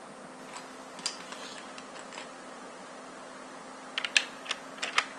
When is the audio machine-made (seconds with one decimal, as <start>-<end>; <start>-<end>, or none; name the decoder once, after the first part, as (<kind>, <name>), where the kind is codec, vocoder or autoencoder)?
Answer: none